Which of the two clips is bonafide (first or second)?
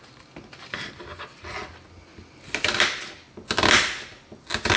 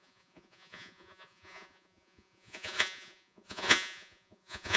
first